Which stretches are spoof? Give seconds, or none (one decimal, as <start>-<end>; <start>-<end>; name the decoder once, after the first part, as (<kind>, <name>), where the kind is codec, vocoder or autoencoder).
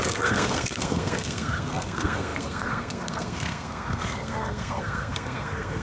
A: 0.0-5.8 (codec, SNAC)